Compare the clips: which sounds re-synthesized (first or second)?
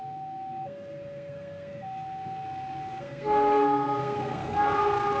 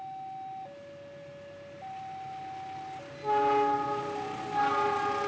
first